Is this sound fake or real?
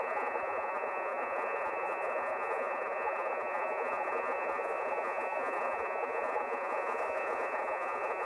fake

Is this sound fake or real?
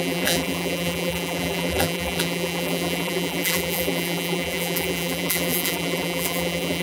fake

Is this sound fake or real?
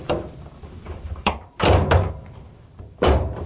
fake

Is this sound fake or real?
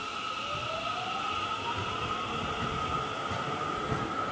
real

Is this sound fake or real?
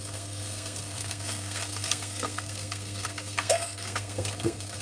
fake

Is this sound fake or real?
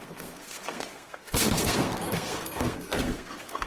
fake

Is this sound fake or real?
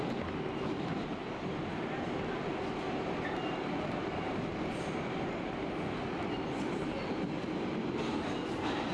real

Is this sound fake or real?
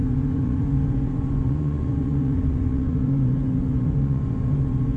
fake